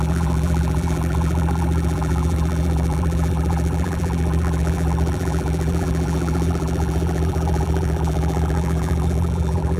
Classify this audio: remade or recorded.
remade